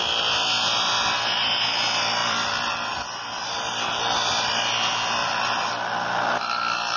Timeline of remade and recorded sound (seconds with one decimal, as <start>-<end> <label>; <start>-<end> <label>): 0.0-2.2 recorded; 2.2-3.0 remade; 3.0-5.2 recorded; 5.2-5.7 remade; 5.7-7.0 recorded